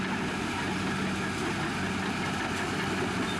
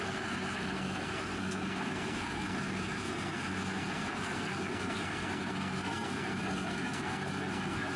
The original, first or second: first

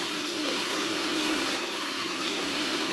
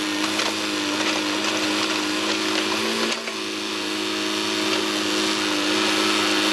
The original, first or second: second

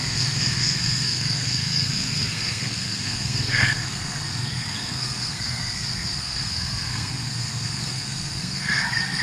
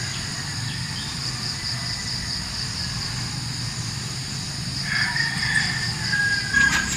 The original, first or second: second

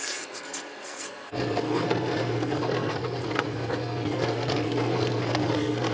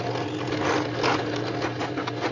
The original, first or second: second